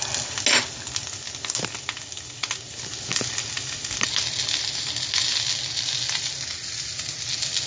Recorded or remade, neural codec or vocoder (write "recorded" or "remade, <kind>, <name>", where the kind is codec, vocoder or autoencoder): recorded